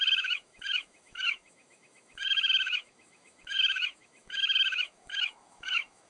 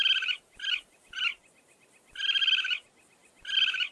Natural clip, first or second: second